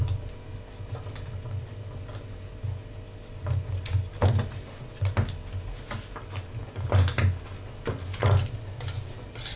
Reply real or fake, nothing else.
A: real